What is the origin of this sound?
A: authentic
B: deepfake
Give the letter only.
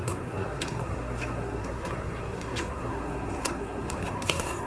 B